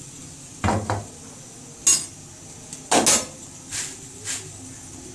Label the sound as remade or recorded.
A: recorded